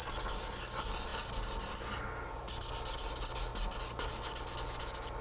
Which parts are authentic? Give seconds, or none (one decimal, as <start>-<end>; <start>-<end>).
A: 0.0-5.2